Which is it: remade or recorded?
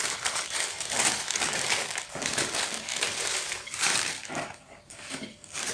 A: remade